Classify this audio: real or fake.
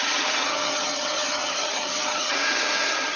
fake